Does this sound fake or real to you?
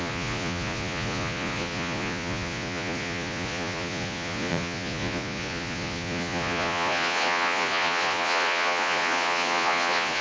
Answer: fake